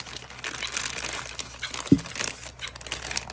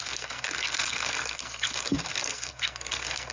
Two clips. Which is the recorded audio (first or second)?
first